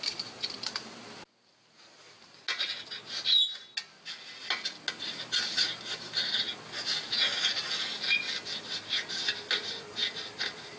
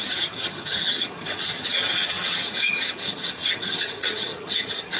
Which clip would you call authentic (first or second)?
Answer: first